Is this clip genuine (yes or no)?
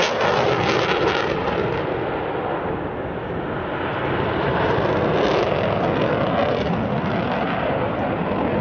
yes